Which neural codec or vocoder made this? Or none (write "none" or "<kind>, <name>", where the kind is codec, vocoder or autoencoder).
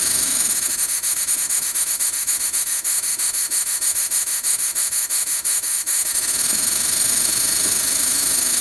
autoencoder, DAC-VAE